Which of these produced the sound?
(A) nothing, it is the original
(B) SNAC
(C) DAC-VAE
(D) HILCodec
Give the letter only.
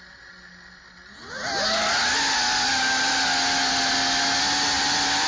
A